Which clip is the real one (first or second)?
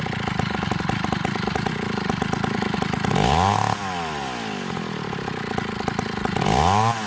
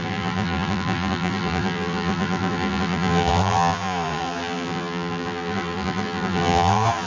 first